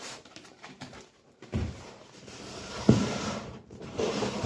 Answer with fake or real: fake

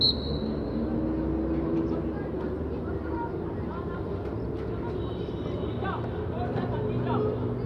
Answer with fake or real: real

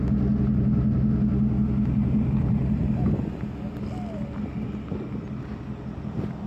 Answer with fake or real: real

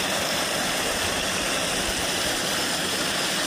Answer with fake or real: real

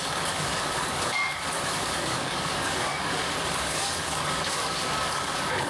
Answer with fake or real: fake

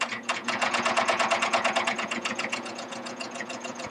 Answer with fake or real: fake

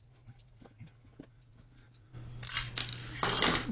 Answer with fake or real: real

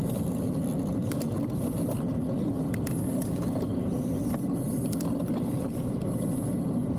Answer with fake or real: real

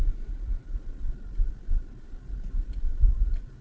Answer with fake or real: real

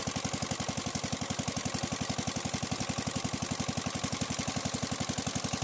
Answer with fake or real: real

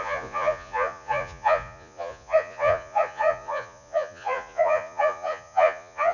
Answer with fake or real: fake